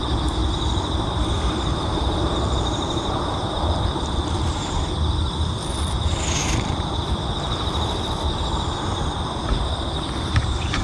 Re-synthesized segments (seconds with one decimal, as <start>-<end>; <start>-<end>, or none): 0.4-4.8; 6.4-7.0